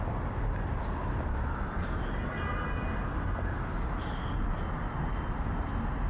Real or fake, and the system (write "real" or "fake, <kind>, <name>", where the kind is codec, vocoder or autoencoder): real